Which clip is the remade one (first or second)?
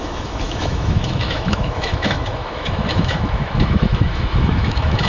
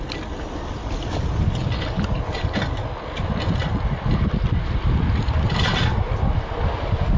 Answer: first